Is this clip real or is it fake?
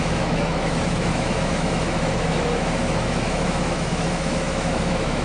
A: fake